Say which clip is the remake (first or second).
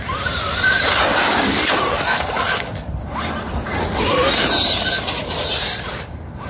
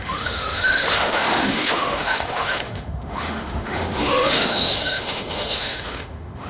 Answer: second